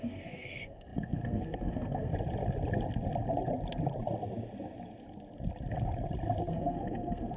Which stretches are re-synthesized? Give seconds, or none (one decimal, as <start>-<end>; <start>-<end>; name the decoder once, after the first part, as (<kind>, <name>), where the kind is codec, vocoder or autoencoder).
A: 0.0-2.1 (codec, SNAC); 6.5-7.4